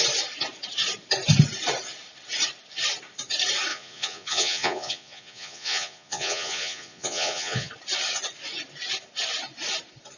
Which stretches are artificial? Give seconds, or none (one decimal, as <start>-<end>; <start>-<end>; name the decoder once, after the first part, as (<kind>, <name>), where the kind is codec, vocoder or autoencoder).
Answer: 3.7-7.7 (vocoder, Vocos)